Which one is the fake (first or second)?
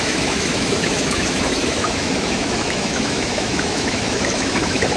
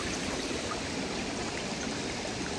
first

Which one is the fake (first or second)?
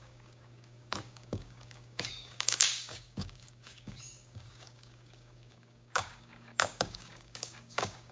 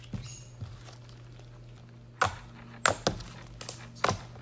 first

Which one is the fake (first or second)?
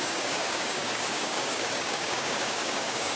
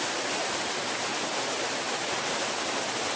first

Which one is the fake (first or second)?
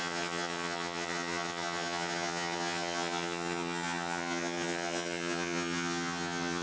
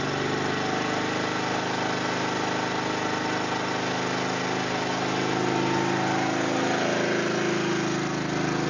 first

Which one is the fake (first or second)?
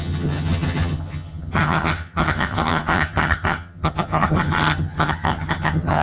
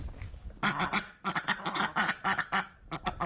first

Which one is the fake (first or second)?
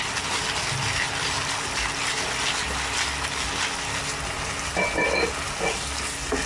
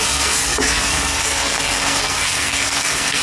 second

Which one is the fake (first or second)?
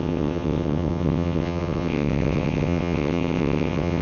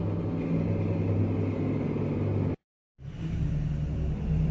first